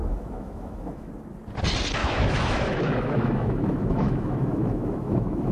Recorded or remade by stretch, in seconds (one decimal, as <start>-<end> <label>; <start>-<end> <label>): 0.0-1.1 remade; 1.1-2.0 recorded; 2.0-5.5 remade